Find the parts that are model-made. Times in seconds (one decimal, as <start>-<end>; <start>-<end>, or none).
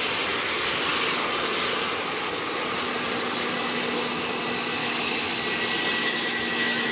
4.8-5.4; 6.0-6.9